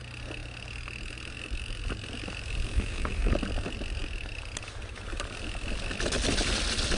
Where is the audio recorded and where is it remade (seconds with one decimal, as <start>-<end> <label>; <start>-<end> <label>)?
0.0-2.7 recorded; 2.7-3.3 remade; 3.3-7.0 recorded